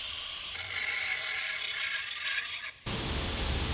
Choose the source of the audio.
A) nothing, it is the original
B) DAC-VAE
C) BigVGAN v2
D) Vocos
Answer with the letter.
C